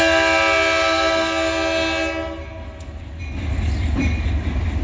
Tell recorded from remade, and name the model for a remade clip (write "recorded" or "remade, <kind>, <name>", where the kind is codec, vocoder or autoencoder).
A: recorded